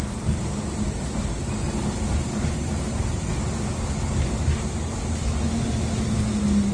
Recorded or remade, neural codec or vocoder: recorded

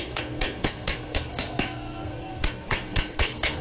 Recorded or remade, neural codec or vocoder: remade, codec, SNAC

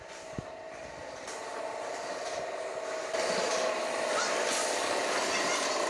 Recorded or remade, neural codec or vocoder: recorded